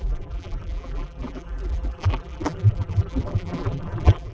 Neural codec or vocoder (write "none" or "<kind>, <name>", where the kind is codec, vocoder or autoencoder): vocoder, BigVGAN v2